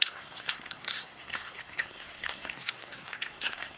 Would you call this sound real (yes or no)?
no